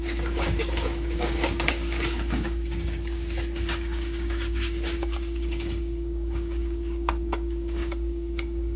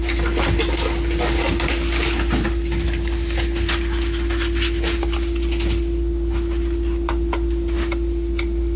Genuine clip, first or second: second